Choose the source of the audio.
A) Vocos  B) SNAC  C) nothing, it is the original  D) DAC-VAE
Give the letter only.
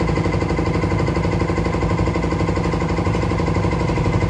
C